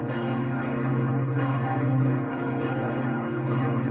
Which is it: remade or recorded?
remade